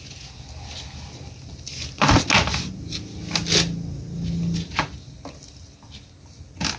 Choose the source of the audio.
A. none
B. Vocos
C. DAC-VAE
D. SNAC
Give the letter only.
A